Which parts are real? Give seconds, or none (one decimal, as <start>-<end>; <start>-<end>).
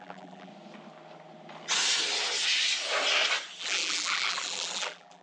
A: 0.5-3.6